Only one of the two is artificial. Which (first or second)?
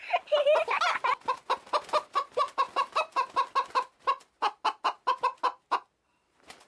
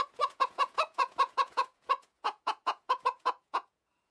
second